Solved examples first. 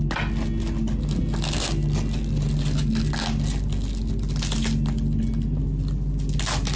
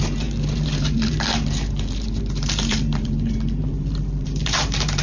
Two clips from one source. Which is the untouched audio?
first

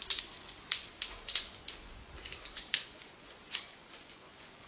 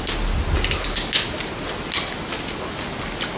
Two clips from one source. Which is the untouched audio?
second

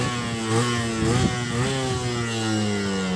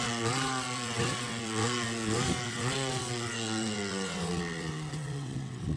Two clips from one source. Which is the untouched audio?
first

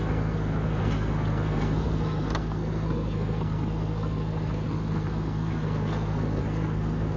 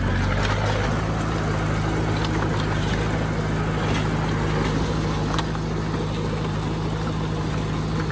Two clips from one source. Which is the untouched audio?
second